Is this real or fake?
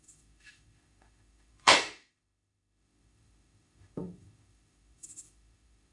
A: fake